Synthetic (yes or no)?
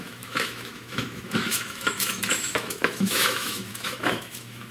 yes